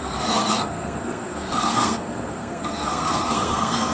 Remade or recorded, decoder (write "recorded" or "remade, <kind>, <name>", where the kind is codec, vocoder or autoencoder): remade, codec, SNAC